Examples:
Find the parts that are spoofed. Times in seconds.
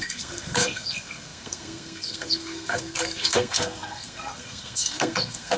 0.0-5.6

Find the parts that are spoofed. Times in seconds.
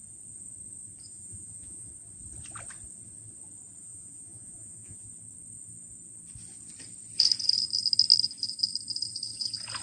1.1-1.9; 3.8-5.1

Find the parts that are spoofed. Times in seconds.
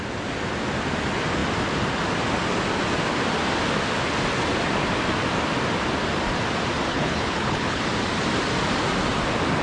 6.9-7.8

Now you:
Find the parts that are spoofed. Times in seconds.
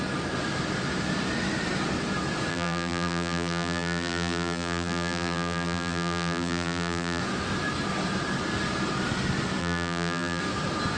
2.5-7.2; 9.6-10.4